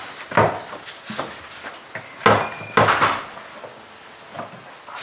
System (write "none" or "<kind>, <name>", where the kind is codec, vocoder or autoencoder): none